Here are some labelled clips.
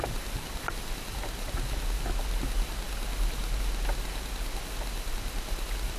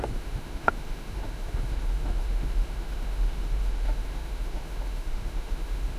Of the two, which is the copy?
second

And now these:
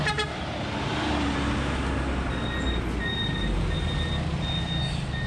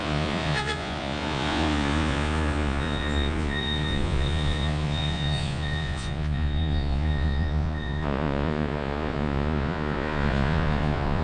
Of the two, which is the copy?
second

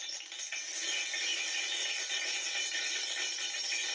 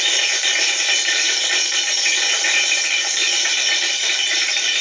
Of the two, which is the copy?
second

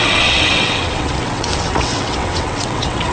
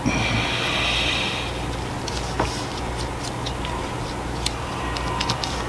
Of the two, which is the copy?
first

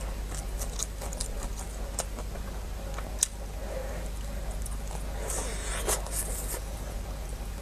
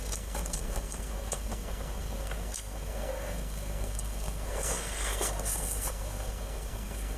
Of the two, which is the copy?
second